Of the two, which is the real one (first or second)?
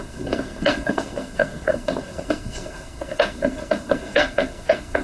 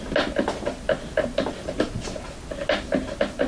second